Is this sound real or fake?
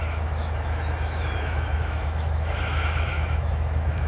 fake